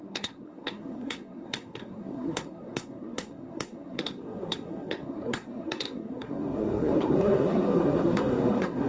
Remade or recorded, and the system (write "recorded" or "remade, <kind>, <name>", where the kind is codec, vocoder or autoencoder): remade, codec, SNAC